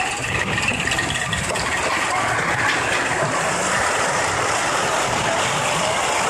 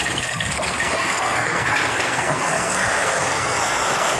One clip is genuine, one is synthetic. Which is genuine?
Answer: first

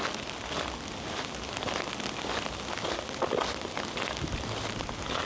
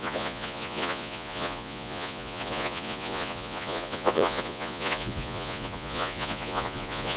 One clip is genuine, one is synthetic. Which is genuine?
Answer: first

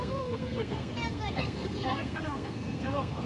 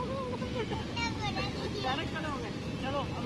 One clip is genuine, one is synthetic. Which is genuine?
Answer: second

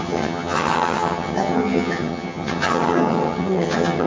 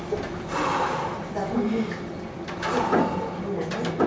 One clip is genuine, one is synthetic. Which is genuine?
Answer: second